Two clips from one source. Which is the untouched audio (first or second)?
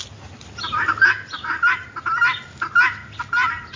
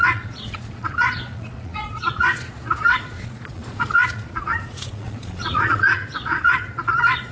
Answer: first